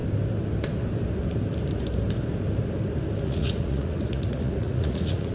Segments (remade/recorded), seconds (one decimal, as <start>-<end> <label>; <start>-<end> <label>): 0.0-3.2 recorded; 3.2-5.3 remade